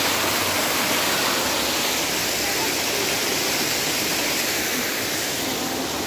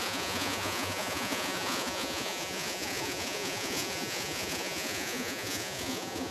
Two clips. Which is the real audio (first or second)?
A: first